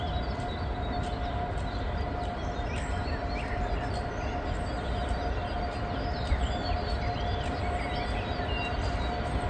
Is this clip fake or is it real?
real